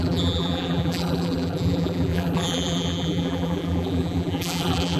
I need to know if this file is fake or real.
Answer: fake